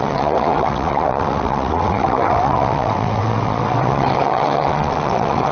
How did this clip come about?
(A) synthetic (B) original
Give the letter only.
A